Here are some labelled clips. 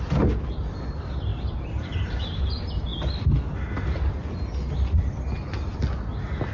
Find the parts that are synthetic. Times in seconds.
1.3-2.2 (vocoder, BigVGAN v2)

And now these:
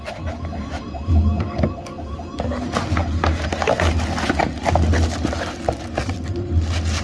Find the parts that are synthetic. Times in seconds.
none

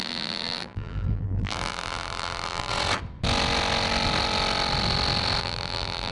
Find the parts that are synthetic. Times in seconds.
0.0-2.7 (vocoder, BigVGAN v2); 5.4-6.1

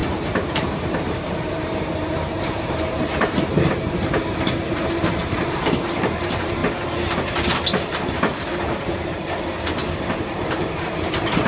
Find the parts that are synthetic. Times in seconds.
0.0-6.6 (vocoder, BigVGAN v2); 7.8-11.5

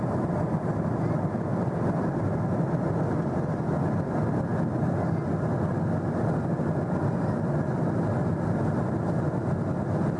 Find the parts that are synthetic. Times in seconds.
1.5-2.2 (vocoder, BigVGAN v2)

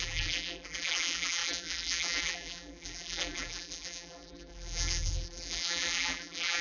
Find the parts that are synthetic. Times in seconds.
0.0-6.6 (vocoder, BigVGAN v2)

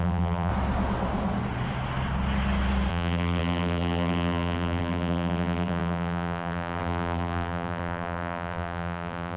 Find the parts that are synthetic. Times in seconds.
0.0-0.5 (vocoder, BigVGAN v2); 2.9-9.4

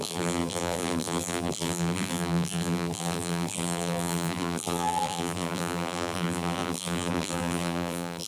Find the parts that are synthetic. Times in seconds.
0.0-8.3 (vocoder, BigVGAN v2)